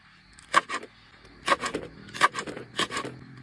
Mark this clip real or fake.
real